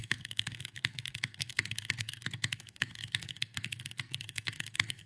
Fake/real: fake